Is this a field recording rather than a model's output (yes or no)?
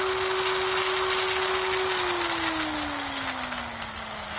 yes